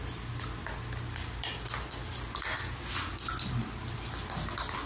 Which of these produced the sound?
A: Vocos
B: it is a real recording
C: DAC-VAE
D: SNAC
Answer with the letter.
B